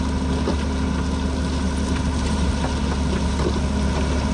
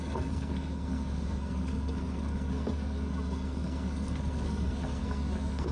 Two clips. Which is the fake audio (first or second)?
second